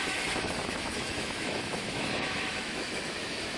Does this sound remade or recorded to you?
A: remade